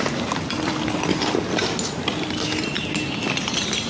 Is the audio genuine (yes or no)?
yes